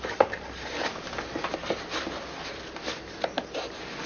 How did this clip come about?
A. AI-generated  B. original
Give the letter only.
B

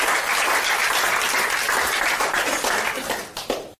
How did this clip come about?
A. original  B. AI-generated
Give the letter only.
A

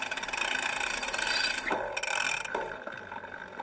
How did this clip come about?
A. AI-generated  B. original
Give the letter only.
B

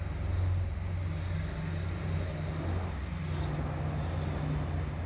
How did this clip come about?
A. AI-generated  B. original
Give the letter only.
B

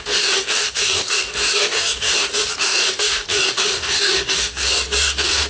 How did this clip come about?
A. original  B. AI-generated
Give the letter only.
B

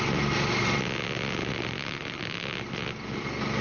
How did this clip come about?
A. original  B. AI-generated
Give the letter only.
A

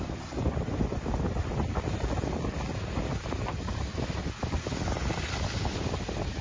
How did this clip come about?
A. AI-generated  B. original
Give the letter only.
B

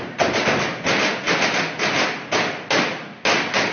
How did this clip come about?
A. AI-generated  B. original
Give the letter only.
B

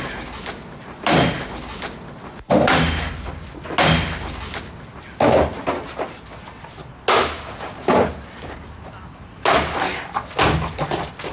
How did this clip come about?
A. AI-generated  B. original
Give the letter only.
B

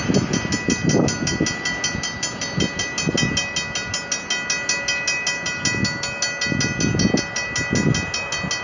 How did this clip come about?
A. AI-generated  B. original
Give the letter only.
B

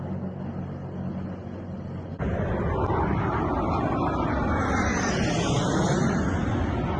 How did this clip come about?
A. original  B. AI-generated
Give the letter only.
A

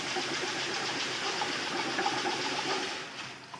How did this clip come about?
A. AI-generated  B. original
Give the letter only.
B